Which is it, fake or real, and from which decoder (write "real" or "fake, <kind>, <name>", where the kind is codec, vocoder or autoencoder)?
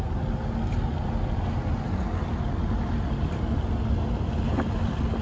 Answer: real